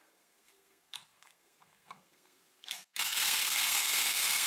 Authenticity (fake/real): fake